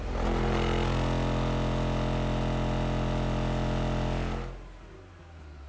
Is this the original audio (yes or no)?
yes